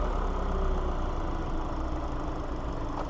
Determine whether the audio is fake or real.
real